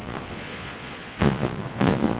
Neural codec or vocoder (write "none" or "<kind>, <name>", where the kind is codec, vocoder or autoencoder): vocoder, Vocos